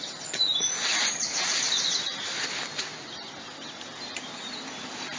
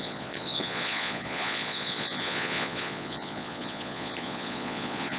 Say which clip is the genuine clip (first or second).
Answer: first